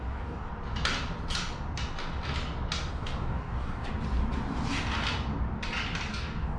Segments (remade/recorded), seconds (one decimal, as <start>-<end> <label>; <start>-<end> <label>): 0.0-0.5 remade; 0.5-2.9 recorded; 2.9-3.9 remade; 3.9-6.1 recorded; 6.1-6.6 remade